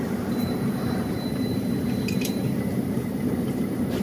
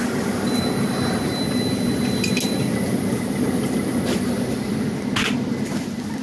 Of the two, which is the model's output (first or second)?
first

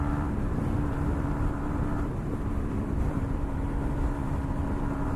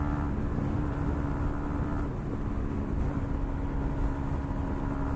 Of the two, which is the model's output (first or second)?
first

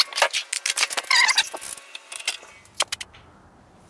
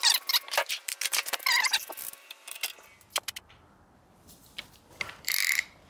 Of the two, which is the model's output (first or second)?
second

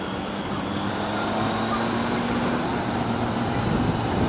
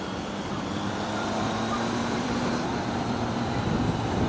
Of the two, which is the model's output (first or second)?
second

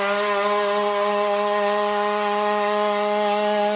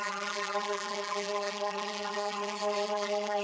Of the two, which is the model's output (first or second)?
second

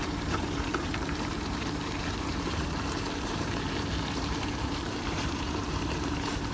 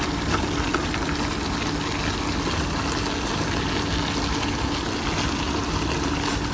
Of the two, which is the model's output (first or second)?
first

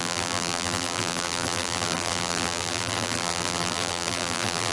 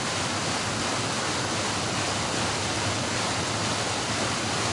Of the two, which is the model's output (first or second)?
first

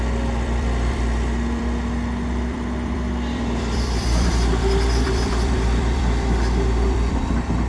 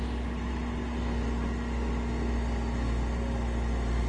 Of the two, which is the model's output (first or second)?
first